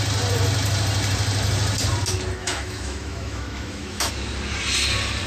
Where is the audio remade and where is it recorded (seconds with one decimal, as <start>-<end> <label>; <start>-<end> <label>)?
0.0-2.4 recorded; 2.4-4.1 remade; 4.1-5.3 recorded